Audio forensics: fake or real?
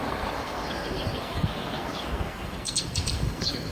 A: fake